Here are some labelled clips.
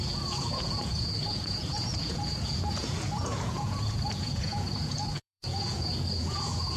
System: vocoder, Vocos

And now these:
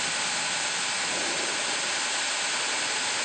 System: none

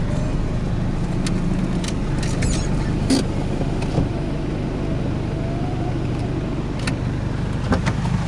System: none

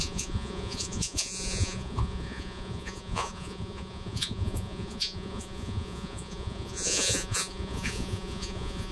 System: vocoder, Vocos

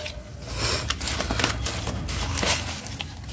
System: none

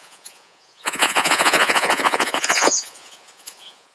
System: vocoder, Vocos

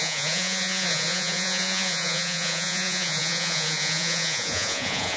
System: vocoder, Vocos